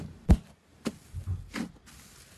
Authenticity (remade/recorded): remade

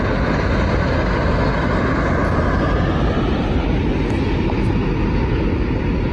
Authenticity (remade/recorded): recorded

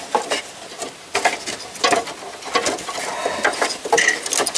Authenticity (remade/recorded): recorded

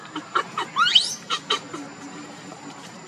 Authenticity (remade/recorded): remade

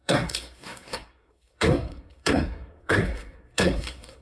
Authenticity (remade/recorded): remade